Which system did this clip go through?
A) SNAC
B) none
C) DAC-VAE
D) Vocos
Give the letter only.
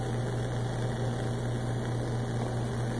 B